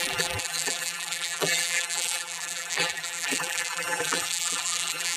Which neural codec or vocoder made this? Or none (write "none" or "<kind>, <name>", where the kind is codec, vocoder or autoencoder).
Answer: vocoder, BigVGAN v2